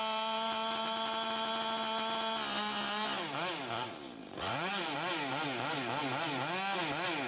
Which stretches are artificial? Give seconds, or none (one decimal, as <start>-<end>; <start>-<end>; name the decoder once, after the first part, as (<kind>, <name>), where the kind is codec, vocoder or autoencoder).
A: 4.2-4.8 (vocoder, Vocos)